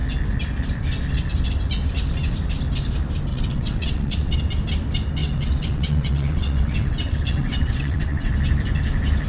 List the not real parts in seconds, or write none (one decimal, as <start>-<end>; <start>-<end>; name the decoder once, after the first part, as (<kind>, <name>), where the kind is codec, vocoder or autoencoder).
3.3-4.4 (vocoder, WaveNeXt); 5.2-8.3